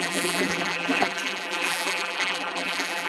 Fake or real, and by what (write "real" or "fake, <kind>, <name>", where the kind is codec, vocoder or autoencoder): fake, vocoder, BigVGAN v2